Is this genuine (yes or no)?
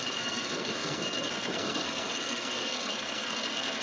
no